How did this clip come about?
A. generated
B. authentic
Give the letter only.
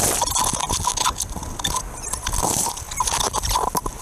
B